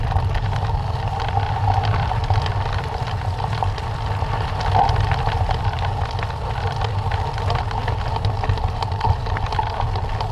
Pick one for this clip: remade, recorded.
recorded